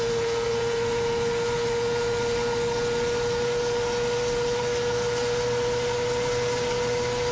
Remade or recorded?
recorded